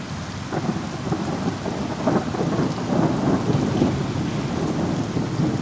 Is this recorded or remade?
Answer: recorded